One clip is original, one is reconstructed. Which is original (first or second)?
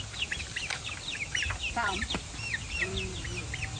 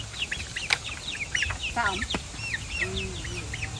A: second